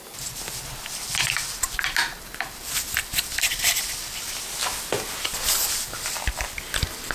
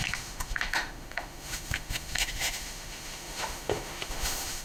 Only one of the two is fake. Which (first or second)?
second